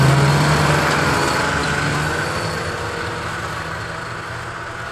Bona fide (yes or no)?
yes